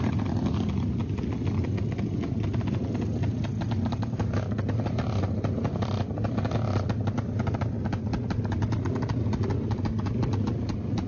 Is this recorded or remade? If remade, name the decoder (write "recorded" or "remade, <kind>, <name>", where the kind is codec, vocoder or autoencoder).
recorded